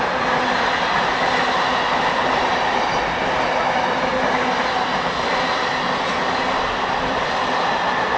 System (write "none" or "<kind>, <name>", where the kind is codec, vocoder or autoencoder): none